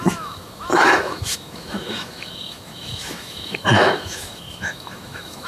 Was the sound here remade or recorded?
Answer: remade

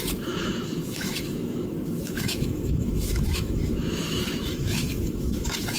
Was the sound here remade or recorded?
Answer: remade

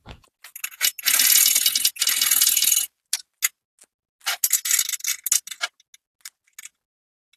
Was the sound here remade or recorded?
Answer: recorded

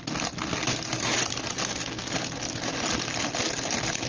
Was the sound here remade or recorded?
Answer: recorded